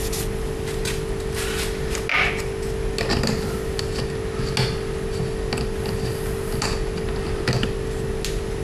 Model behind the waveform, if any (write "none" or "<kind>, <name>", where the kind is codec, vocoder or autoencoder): none